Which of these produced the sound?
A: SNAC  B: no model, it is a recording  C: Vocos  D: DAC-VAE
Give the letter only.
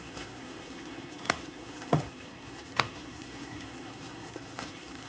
A